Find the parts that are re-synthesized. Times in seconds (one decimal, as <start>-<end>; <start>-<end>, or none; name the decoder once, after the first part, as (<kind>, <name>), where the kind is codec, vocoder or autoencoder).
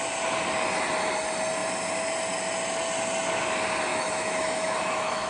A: 3.9-5.3 (autoencoder, DAC-VAE)